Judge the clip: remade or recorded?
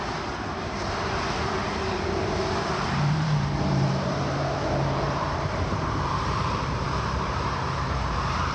remade